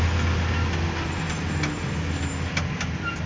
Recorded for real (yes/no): yes